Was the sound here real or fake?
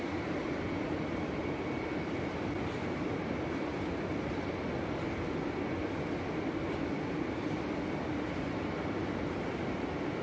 real